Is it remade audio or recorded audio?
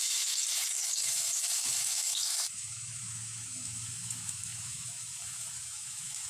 remade